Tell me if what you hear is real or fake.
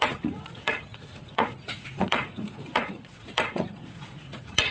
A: fake